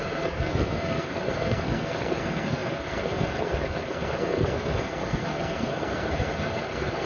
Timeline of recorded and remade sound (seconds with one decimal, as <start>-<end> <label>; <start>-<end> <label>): 0.0-7.1 remade